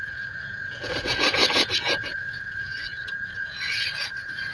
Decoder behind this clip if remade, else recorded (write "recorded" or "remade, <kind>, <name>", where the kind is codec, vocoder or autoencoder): remade, vocoder, Vocos